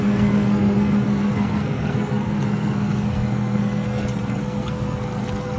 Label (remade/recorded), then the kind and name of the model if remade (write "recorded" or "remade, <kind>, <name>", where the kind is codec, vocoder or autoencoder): remade, codec, SNAC